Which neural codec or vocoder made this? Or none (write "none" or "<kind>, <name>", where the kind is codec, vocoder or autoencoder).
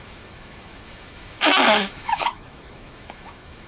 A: autoencoder, DAC-VAE